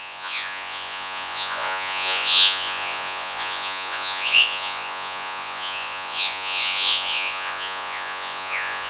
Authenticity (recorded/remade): remade